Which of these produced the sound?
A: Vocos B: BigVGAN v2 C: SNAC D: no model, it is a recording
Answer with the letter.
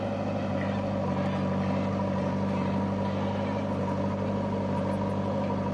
D